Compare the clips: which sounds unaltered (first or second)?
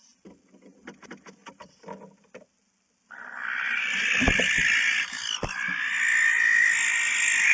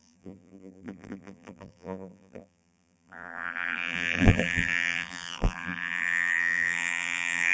first